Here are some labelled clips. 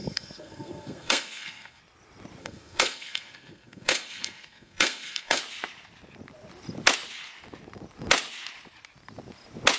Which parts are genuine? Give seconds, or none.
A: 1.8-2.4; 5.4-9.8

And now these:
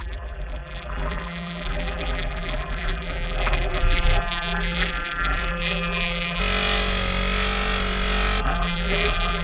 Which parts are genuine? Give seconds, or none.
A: 6.4-8.4

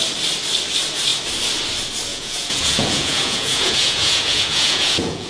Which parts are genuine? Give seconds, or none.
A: 0.0-2.1

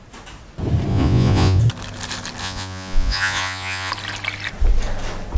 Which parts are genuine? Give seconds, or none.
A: 0.0-0.9; 1.6-2.4; 3.9-5.4

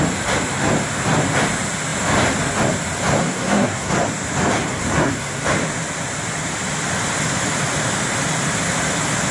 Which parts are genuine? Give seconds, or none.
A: 0.0-3.2; 3.9-4.6; 5.4-9.3